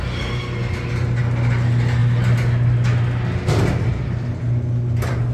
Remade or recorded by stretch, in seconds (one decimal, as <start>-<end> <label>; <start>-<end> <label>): 0.0-5.3 recorded